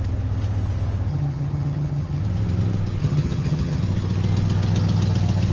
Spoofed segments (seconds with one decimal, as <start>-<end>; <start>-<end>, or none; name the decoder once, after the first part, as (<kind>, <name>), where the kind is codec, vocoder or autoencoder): 1.1-2.2 (vocoder, HiFi-GAN); 3.0-3.8